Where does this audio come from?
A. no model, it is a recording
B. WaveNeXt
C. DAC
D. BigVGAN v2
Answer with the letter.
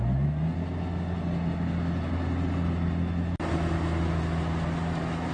A